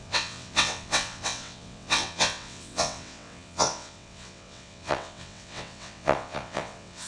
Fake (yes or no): yes